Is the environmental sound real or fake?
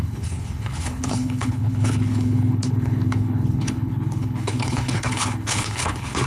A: fake